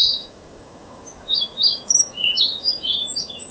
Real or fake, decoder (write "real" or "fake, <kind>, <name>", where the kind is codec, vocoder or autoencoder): fake, autoencoder, DAC-VAE